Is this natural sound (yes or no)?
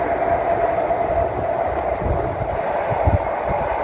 yes